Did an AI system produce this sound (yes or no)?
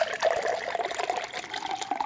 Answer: no